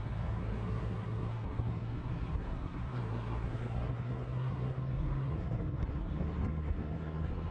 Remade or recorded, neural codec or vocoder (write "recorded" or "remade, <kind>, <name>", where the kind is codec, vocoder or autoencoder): remade, codec, SNAC